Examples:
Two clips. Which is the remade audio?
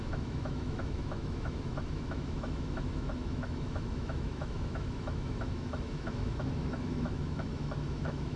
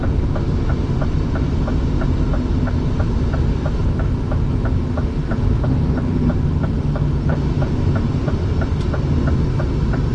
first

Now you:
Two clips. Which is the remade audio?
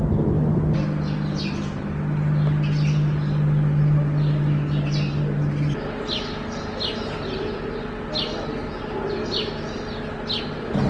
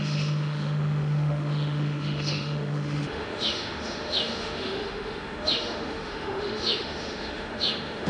second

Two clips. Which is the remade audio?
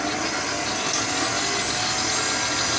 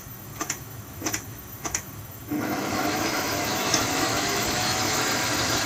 second